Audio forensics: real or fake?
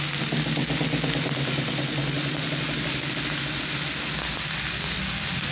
real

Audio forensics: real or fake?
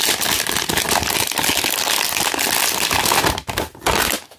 real